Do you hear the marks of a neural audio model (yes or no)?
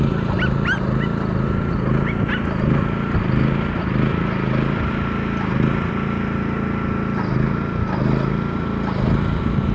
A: no